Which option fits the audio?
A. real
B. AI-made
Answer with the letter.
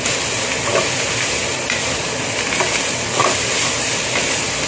A